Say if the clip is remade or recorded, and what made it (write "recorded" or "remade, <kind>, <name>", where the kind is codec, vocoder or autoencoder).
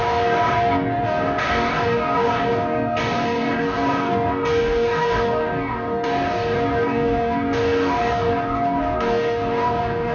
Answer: remade, codec, DAC